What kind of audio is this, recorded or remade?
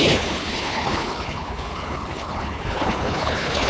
remade